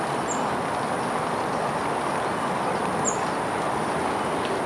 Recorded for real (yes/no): yes